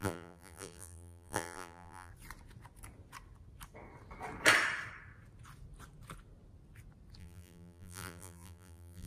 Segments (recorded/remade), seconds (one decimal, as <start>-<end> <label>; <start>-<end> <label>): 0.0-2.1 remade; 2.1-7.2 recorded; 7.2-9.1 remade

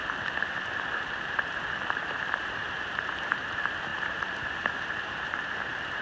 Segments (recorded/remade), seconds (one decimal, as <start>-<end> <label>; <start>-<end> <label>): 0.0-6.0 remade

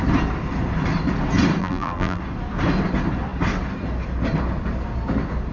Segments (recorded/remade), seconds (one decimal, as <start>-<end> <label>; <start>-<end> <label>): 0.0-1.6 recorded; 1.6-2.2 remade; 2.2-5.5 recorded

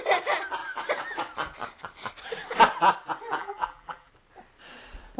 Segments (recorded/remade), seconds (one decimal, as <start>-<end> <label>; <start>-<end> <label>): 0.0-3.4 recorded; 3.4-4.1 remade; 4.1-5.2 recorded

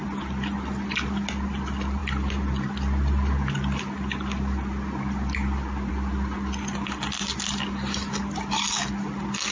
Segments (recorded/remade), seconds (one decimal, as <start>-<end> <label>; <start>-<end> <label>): 0.0-9.5 recorded

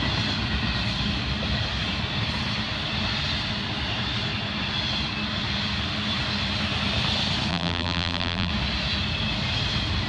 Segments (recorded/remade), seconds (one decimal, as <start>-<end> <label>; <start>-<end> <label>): 0.0-7.5 recorded; 7.5-8.5 remade; 8.5-10.1 recorded

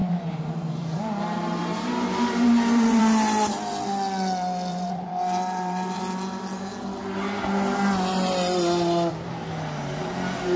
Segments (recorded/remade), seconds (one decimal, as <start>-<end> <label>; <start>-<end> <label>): 0.0-3.0 remade; 3.0-4.7 recorded; 4.7-6.0 remade; 6.0-10.6 recorded